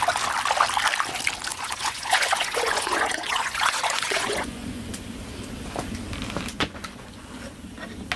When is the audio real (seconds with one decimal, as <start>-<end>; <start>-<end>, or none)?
0.0-1.5; 4.9-6.5; 7.4-8.2